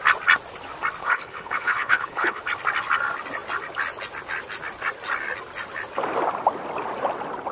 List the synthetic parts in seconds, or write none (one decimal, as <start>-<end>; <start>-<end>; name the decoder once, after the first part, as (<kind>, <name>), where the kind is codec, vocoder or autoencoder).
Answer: 1.0-2.4 (codec, HILCodec)